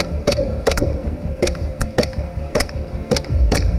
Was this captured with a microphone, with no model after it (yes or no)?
no